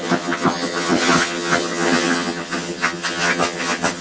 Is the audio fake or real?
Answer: fake